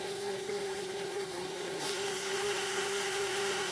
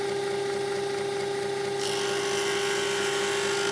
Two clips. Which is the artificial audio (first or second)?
first